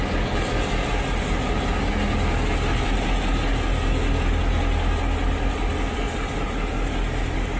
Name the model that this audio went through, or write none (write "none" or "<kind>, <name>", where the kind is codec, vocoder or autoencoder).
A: none